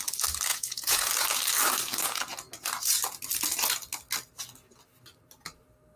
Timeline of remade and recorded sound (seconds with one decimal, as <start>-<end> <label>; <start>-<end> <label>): 0.0-0.5 recorded; 0.5-1.1 remade; 1.1-6.0 recorded